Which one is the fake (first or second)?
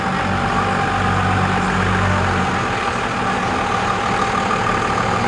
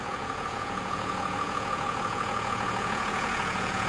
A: second